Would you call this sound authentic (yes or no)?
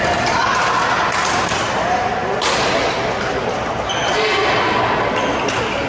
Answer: yes